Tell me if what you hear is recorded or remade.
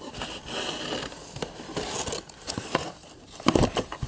recorded